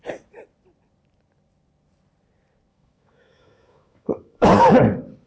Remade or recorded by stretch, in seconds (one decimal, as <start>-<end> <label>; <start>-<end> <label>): 0.0-2.7 recorded; 2.7-4.8 remade; 4.8-5.3 recorded